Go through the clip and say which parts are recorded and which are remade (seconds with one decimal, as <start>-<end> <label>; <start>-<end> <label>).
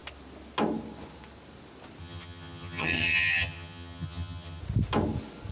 0.0-2.0 recorded; 2.0-4.6 remade; 4.6-5.5 recorded